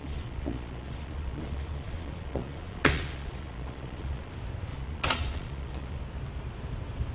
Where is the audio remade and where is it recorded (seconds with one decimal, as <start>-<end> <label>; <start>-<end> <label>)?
0.0-4.3 remade; 4.3-4.7 recorded; 4.7-6.0 remade; 6.0-7.1 recorded